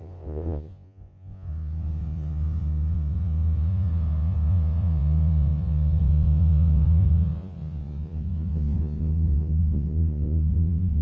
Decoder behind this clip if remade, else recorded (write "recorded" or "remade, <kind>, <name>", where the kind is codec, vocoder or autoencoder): remade, vocoder, Vocos